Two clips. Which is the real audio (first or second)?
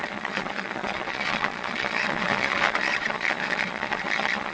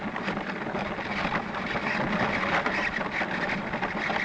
second